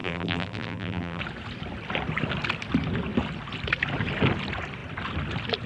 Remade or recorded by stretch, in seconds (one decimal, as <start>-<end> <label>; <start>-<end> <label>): 0.0-1.2 remade; 1.2-5.7 recorded